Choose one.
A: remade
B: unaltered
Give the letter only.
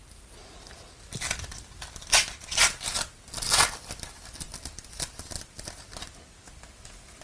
B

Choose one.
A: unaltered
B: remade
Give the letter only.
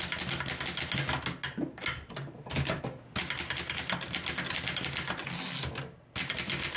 A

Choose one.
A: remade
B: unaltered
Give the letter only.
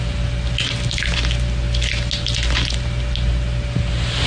B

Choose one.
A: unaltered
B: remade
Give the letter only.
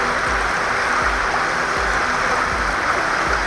A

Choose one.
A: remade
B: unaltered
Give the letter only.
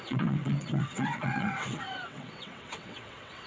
A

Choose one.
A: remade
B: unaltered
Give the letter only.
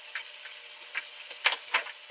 B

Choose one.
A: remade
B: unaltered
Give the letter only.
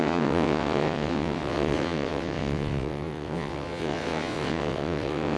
A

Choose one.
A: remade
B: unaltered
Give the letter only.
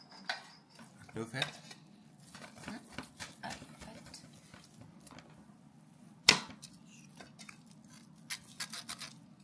B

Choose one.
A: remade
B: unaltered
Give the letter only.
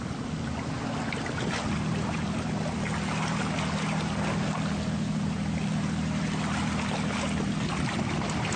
B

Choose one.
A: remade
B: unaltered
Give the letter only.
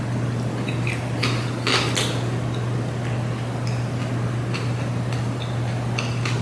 B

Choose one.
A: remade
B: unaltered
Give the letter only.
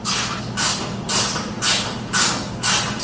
B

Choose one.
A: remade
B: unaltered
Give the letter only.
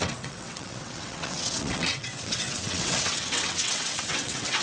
A